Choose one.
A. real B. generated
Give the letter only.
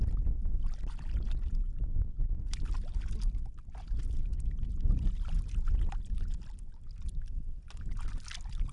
A